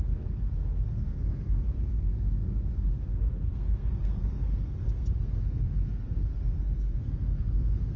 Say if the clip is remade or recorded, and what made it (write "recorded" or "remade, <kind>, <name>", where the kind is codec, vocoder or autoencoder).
remade, codec, SNAC